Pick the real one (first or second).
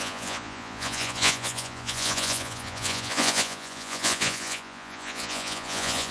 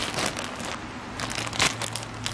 second